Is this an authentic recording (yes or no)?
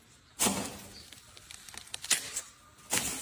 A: yes